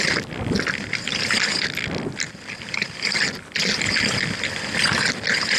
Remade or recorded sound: recorded